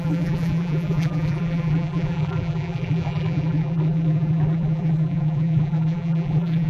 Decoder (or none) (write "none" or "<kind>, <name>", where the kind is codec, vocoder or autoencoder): vocoder, BigVGAN v2